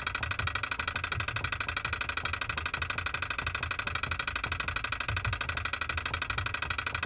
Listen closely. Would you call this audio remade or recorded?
recorded